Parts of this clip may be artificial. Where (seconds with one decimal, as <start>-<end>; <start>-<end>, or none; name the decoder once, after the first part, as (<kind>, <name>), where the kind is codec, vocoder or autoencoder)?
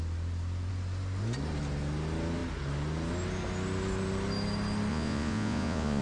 4.9-6.0 (vocoder, Vocos)